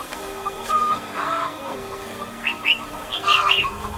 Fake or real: fake